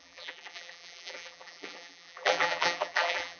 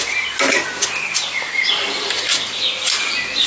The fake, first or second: first